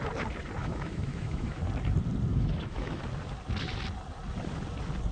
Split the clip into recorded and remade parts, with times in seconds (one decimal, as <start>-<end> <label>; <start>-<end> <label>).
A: 0.0-0.6 recorded; 0.6-1.6 remade; 1.6-2.3 recorded; 2.3-3.0 remade; 3.0-5.1 recorded